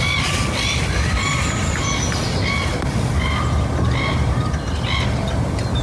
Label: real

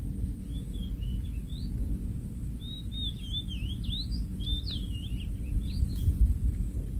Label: real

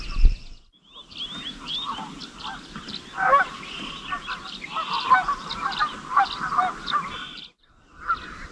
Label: real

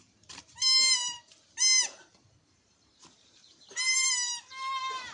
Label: fake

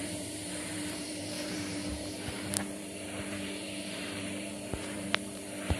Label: fake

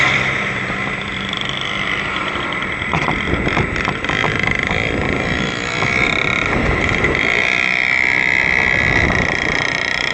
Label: fake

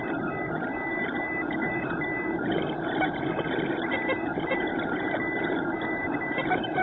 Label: fake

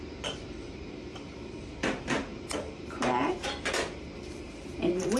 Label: fake